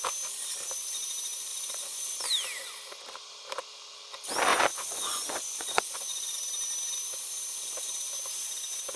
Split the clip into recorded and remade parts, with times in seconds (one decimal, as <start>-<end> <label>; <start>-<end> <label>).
0.0-1.5 recorded; 1.5-2.2 remade; 2.2-4.5 recorded; 4.5-6.3 remade; 6.3-9.0 recorded